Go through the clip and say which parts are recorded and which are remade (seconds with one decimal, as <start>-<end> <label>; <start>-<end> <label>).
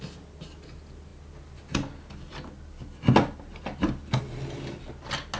0.0-5.4 recorded